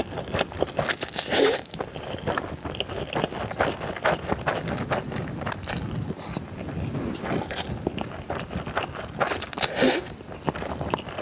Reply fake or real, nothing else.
real